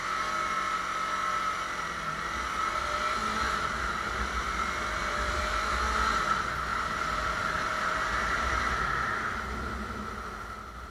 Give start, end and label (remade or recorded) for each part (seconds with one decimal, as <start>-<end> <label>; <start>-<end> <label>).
0.0-10.9 recorded